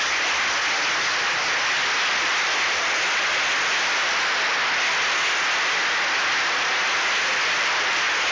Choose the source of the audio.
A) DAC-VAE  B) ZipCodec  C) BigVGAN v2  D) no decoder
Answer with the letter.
D